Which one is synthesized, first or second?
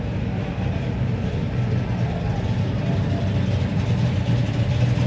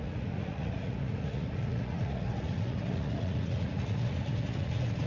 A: second